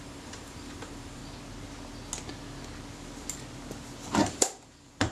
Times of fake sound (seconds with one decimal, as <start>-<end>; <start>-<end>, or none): 0.0-1.2; 4.3-5.1